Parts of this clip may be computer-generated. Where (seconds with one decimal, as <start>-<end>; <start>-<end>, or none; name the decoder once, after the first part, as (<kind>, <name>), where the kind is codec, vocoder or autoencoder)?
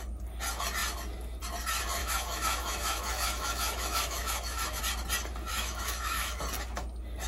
2.0-4.8 (autoencoder, DAC-VAE); 5.5-6.4